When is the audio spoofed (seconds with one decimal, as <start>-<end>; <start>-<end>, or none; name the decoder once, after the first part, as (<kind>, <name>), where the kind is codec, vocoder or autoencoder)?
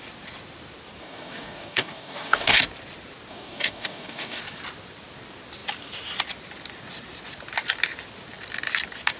1.0-2.6 (codec, DAC); 3.3-4.4